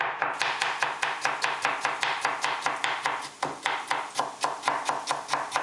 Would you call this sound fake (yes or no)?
no